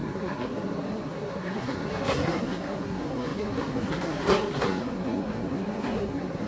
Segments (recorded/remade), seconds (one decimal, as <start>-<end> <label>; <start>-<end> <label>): 0.0-6.5 remade